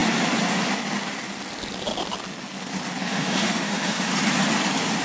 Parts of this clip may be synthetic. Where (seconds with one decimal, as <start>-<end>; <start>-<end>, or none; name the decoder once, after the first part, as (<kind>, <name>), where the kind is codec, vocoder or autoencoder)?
3.0-4.1 (autoencoder, DAC-VAE)